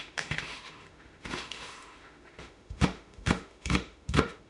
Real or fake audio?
fake